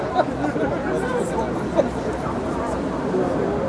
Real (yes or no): yes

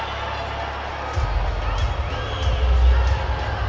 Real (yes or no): yes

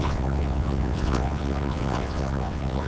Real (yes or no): no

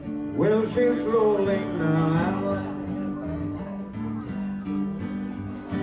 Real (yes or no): yes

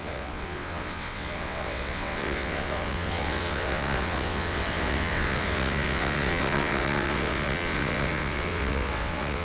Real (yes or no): no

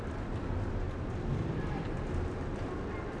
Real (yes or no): yes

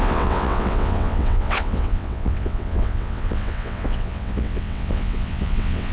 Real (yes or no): no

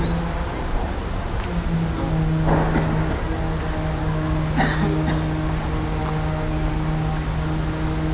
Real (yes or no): yes